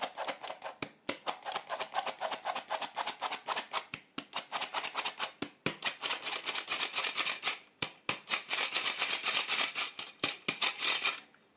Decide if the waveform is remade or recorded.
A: recorded